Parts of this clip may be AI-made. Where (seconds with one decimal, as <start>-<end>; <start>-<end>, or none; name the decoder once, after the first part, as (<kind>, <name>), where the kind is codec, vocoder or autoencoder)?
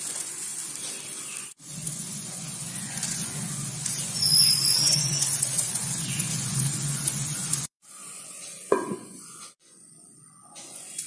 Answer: 0.0-0.5 (vocoder, Vocos); 1.4-11.1